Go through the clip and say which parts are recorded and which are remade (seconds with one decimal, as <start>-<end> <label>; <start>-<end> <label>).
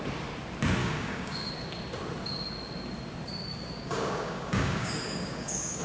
0.0-0.8 recorded; 0.8-1.5 remade; 1.5-3.5 recorded; 3.5-5.8 remade